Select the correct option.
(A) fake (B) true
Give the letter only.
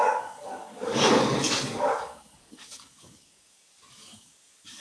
A